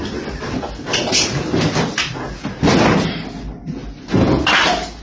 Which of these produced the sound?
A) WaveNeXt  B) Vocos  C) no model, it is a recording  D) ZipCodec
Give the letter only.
C